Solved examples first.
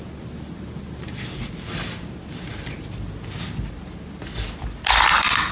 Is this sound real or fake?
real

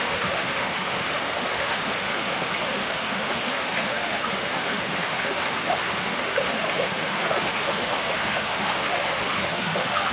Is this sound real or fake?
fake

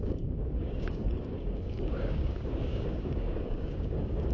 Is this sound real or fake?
fake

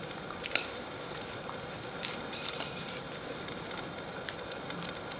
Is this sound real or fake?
real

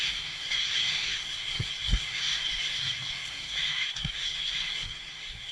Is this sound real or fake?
fake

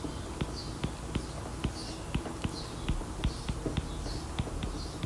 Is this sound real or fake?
real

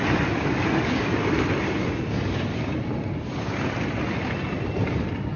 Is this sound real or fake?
real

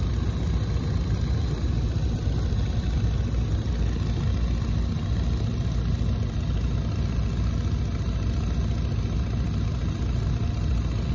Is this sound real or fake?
real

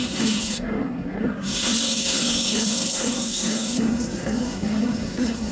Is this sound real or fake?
fake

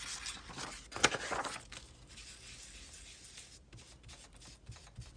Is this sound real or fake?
real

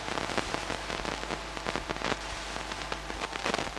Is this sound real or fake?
real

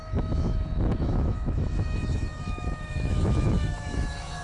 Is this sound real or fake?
fake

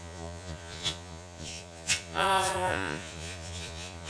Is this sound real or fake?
fake